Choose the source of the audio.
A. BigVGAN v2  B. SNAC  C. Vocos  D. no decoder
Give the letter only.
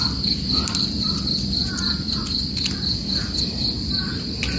D